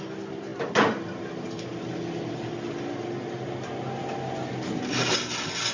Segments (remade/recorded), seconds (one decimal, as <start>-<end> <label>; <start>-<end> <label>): 0.0-5.7 recorded